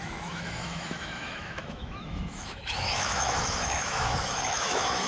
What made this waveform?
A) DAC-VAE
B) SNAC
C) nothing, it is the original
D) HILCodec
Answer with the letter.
A